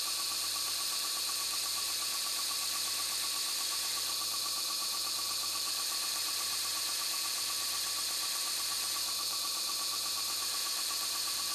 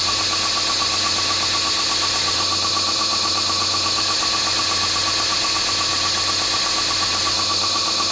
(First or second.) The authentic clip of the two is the second